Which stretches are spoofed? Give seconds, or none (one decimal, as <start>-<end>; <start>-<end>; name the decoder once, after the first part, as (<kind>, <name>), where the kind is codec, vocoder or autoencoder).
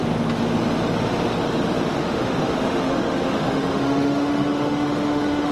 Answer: 1.9-5.5 (autoencoder, DAC-VAE)